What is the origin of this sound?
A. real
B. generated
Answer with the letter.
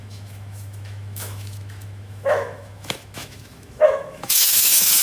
B